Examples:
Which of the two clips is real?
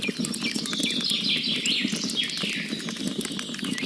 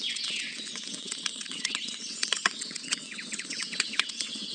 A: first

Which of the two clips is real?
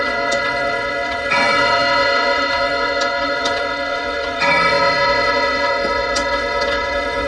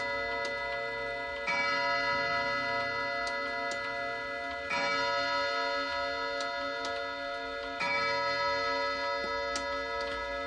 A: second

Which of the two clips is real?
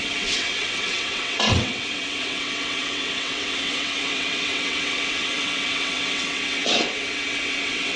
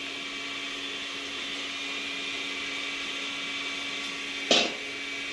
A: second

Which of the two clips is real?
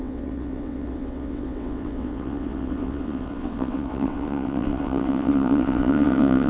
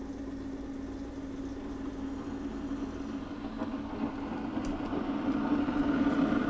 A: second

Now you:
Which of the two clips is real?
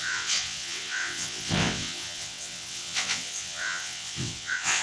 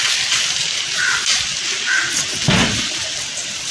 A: second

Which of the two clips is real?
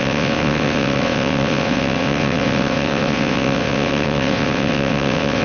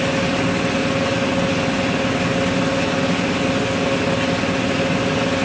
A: second